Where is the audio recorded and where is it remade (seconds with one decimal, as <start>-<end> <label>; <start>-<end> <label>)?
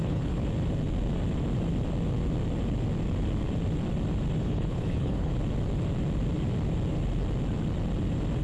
0.0-0.4 remade; 0.4-4.4 recorded; 4.4-5.3 remade; 5.3-8.4 recorded